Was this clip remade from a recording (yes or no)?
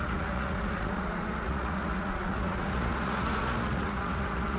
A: yes